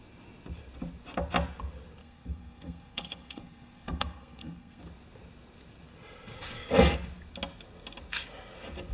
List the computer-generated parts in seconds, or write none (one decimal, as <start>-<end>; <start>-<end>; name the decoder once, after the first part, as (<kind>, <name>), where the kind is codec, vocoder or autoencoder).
2.0-4.8 (codec, SNAC)